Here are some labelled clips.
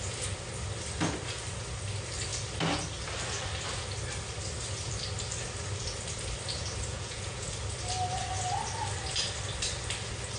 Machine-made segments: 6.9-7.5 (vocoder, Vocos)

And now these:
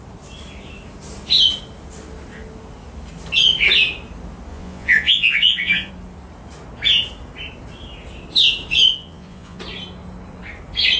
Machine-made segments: 4.5-5.9 (vocoder, Vocos); 8.9-9.6

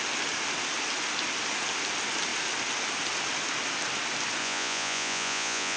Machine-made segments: 4.4-5.8 (vocoder, Vocos)

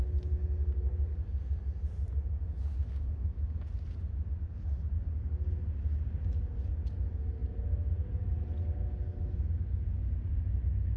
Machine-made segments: none